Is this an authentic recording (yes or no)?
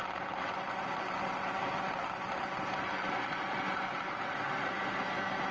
yes